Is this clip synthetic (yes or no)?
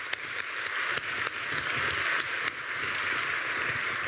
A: no